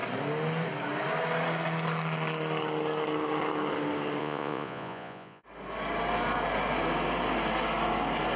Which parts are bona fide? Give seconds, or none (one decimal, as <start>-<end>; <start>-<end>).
0.0-4.2; 5.4-8.4